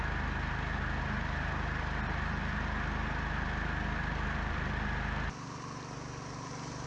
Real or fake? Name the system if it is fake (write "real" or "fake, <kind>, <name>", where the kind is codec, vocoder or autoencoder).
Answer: real